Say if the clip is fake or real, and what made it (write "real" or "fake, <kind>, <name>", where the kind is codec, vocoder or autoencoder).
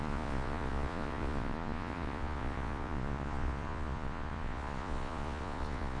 fake, vocoder, Vocos